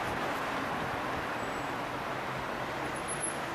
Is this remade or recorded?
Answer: recorded